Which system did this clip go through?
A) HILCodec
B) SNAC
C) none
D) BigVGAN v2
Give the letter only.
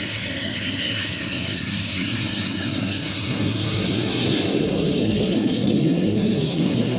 B